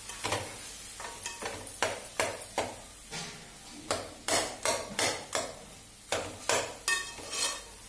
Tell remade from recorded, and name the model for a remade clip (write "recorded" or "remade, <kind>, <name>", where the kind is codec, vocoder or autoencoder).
recorded